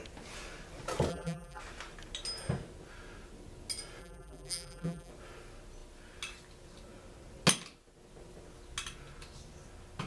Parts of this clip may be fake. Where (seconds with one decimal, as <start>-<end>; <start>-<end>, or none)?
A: 1.1-1.6; 4.0-5.1